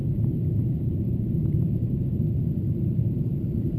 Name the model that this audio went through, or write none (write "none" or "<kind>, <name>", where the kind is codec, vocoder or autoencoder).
vocoder, BigVGAN v2